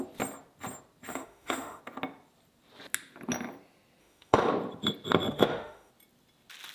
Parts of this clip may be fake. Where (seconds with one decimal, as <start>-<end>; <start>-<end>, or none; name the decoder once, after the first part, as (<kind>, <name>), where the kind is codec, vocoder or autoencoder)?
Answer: 1.1-1.8 (autoencoder, DAC-VAE); 4.0-4.5; 5.3-5.9